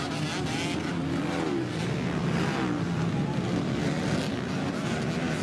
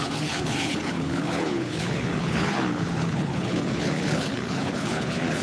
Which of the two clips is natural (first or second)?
first